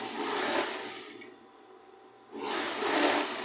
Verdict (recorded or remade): recorded